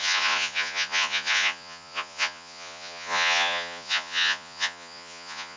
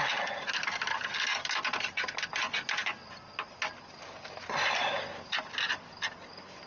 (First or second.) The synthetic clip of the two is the first